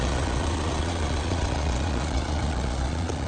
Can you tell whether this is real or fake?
fake